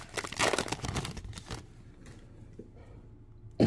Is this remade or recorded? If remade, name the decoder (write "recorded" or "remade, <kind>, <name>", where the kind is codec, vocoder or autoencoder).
recorded